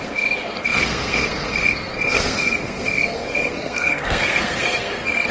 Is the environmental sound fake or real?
fake